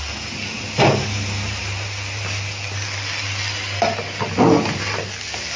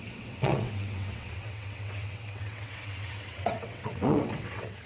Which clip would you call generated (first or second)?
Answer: second